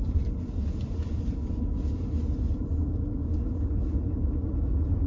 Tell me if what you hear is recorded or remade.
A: recorded